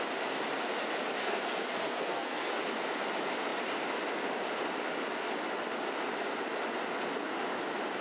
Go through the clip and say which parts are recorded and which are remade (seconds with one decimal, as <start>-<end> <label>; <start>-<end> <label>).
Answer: 0.0-1.2 recorded; 1.2-2.6 remade; 2.6-8.0 recorded